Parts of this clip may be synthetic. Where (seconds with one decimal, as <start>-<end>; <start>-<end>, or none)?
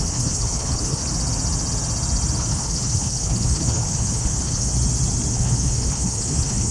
0.0-1.0; 2.4-4.7; 5.3-6.7